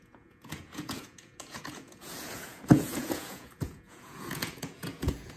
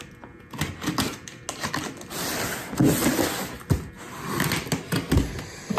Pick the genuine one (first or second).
second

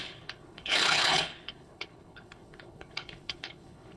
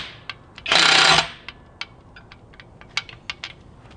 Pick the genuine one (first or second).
second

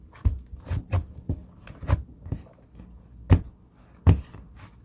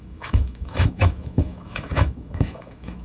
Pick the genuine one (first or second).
first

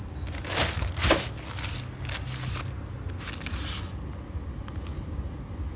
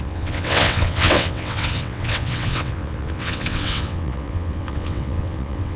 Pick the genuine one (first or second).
first